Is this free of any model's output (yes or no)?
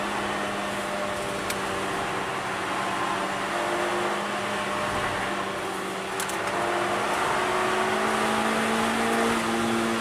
yes